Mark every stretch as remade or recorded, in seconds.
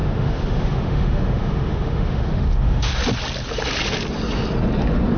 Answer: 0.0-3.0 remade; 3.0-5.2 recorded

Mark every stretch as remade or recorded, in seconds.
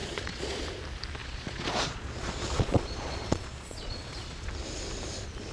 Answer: 0.0-0.6 remade; 0.6-1.2 recorded; 1.2-4.5 remade; 4.5-5.5 recorded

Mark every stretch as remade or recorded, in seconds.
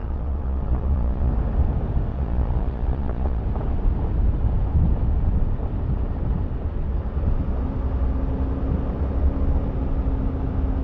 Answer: 0.0-1.3 remade; 1.3-2.1 recorded; 2.1-3.4 remade; 3.4-10.8 recorded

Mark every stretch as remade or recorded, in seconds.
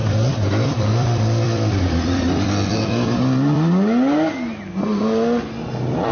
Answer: 0.0-3.7 remade; 3.7-6.1 recorded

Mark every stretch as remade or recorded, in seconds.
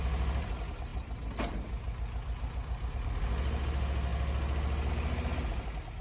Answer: 0.0-6.0 recorded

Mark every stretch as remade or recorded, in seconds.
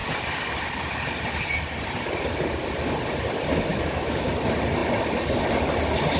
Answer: 0.0-3.7 recorded; 3.7-4.3 remade; 4.3-6.2 recorded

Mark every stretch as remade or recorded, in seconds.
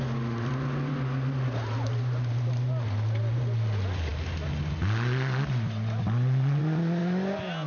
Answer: 0.0-7.7 recorded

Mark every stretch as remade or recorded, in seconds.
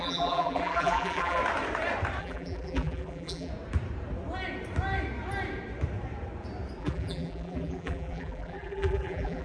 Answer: 0.0-1.4 remade; 1.4-2.2 recorded; 2.2-3.5 remade; 3.5-6.8 recorded; 6.8-9.4 remade